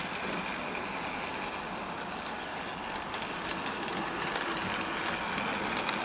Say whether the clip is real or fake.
real